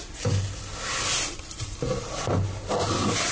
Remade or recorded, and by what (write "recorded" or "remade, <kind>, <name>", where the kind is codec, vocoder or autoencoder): recorded